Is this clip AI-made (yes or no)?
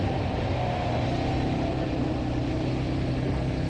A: no